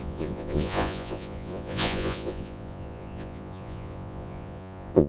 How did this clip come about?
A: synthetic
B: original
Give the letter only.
A